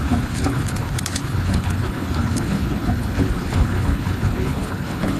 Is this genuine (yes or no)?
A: no